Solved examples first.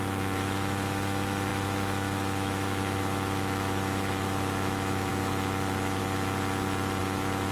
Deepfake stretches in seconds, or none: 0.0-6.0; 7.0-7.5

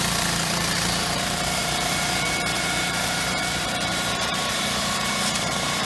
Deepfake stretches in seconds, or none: 0.0-5.8

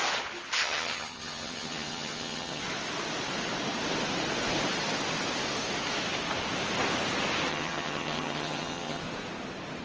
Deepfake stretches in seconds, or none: 0.6-2.6; 7.5-9.0

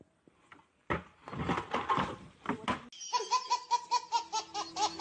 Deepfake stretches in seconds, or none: none

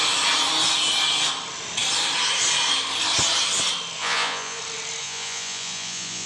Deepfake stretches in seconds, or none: 4.0-4.6; 5.0-6.3